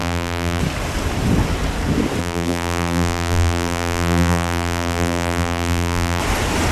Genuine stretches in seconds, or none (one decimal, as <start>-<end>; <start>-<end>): 0.6-2.2; 6.2-6.7